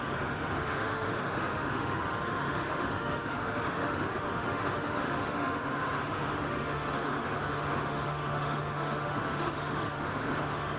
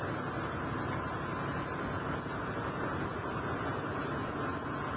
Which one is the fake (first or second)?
first